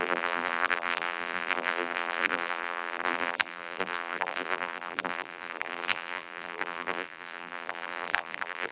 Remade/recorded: remade